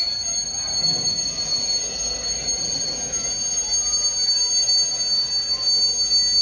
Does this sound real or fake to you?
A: real